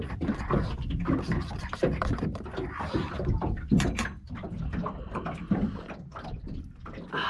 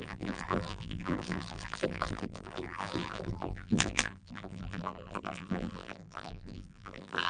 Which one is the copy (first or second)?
second